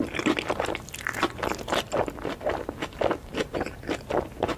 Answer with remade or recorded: recorded